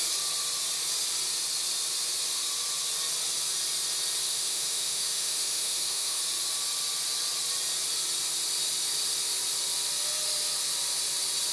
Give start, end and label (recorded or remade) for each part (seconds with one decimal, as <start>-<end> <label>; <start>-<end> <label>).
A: 0.0-4.3 recorded; 4.3-6.2 remade; 6.2-11.5 recorded